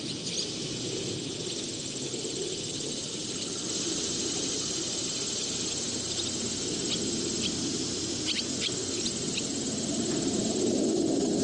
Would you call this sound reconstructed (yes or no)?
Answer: no